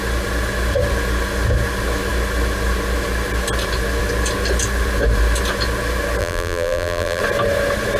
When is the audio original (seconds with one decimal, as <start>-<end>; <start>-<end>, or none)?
0.0-6.2; 7.2-8.0